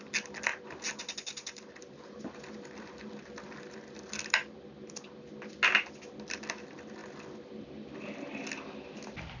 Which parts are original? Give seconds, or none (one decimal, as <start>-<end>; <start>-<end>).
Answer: 0.0-9.4

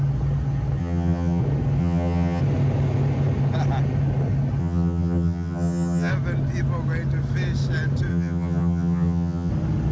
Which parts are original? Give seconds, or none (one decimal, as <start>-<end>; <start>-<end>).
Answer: 0.0-0.8; 1.4-1.8; 2.4-4.6; 6.1-8.1; 9.5-9.9

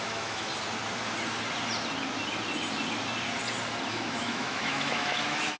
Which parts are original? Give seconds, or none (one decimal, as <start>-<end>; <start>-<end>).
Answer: 0.5-3.9

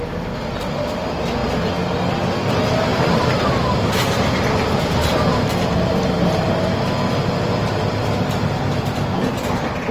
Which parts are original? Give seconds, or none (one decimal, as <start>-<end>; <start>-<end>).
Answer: 0.0-2.9; 6.5-9.9